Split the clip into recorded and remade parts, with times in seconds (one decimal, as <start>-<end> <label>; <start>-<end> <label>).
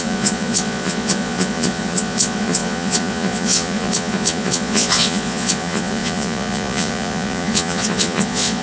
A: 0.0-8.6 remade